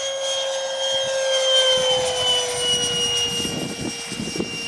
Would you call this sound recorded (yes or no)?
yes